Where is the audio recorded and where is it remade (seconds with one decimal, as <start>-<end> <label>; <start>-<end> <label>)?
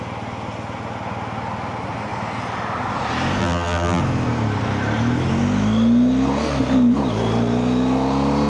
0.0-3.4 recorded; 3.4-4.0 remade; 4.0-8.5 recorded